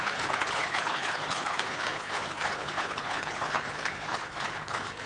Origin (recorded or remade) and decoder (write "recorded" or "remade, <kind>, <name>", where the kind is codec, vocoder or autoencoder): remade, codec, HILCodec